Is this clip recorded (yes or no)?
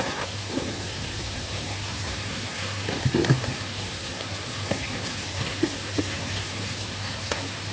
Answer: no